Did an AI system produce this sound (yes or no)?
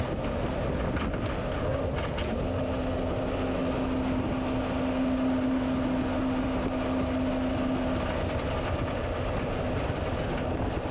no